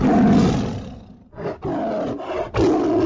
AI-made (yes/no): no